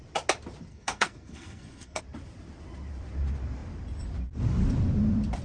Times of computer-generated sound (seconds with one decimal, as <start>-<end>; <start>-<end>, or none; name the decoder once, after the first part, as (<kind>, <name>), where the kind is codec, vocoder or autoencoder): 0.7-2.0 (codec, SNAC)

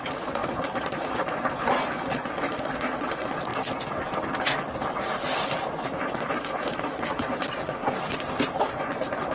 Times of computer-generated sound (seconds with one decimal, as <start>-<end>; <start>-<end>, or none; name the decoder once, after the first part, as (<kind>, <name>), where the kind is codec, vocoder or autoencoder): 0.0-3.5 (vocoder, Vocos); 6.0-7.8; 8.7-9.3

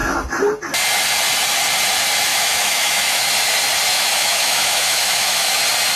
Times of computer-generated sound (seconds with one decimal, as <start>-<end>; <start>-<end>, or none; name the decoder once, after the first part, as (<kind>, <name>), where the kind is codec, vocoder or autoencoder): 2.3-3.3 (autoencoder, DAC-VAE); 3.9-5.6